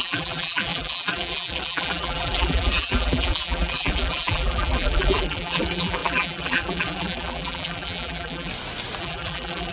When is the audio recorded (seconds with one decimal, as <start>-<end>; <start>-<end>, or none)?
8.5-9.0